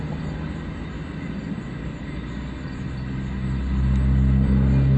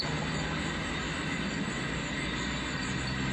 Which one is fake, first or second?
first